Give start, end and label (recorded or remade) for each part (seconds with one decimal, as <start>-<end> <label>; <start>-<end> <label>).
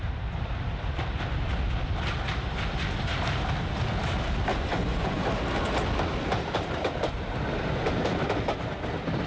0.0-4.5 recorded; 4.5-5.2 remade; 5.2-9.3 recorded